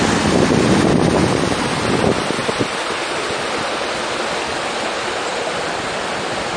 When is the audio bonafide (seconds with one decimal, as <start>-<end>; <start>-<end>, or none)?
0.0-6.6